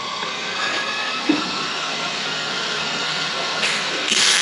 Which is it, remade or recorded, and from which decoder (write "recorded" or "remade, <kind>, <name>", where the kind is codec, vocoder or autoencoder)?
remade, codec, SNAC